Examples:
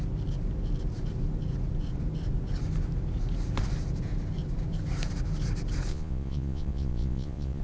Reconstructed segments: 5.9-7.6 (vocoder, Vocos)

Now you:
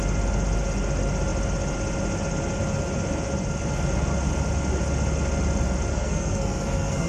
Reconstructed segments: 5.9-7.1 (codec, SNAC)

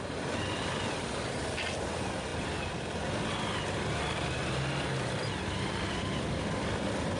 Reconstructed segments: none

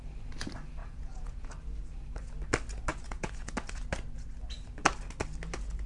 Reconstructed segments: 0.8-1.5 (vocoder, Vocos); 2.9-3.5

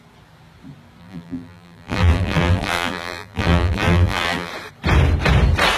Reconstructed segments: 1.0-4.5 (vocoder, BigVGAN v2)